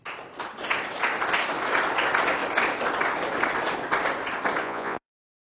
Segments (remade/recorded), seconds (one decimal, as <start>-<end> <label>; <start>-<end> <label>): 0.0-4.6 recorded; 4.6-5.6 remade